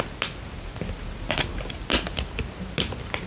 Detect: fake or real real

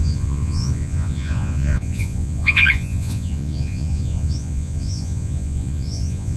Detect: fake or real fake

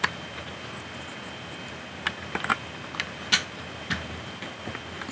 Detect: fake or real real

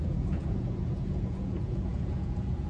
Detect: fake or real fake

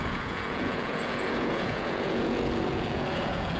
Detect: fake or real fake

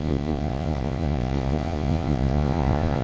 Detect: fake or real fake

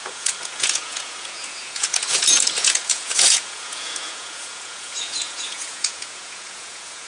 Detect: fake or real fake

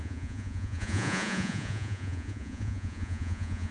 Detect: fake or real fake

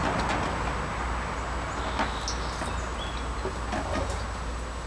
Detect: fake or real real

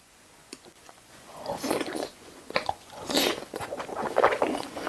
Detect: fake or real fake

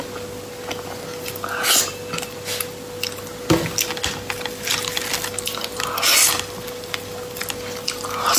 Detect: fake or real real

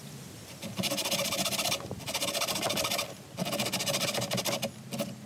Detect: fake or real real